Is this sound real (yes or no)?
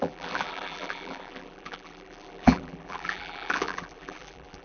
no